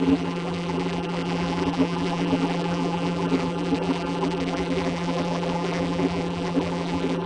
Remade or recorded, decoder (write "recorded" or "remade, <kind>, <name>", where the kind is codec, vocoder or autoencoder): remade, vocoder, BigVGAN v2